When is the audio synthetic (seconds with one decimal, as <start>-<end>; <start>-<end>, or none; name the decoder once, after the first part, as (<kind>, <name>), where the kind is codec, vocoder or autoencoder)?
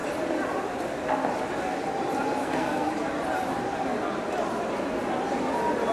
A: 2.4-2.9 (codec, SNAC)